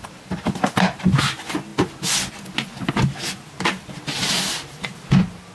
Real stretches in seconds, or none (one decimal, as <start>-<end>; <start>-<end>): 0.0-5.5